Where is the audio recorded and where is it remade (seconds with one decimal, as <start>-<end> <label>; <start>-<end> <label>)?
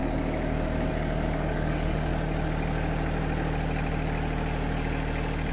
0.0-2.1 remade; 2.1-5.5 recorded